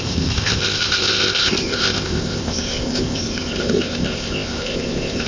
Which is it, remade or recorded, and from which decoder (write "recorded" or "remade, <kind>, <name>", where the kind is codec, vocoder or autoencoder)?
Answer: remade, codec, ZipCodec